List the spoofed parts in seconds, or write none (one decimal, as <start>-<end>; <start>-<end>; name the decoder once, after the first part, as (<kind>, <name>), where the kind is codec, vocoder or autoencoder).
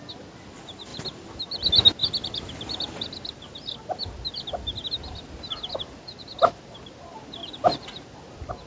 none